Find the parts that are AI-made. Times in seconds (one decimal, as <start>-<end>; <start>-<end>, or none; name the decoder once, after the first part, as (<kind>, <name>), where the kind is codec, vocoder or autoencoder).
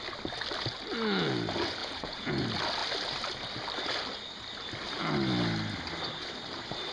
1.8-2.3 (vocoder, Vocos)